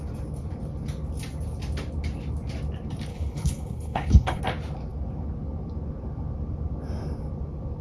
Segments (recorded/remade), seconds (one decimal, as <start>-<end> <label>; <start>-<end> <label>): 0.0-3.1 recorded; 3.1-4.4 remade; 4.4-7.8 recorded